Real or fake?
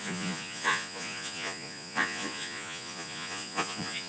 fake